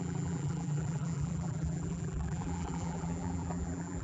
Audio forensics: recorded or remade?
remade